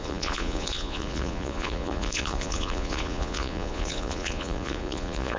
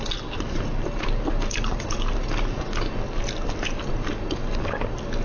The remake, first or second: first